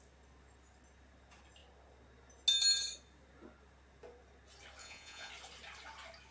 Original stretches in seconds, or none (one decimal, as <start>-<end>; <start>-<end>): 0.0-4.8; 5.3-6.3